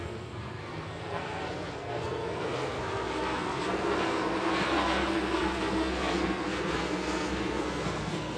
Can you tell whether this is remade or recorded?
remade